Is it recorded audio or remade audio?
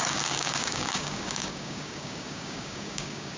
remade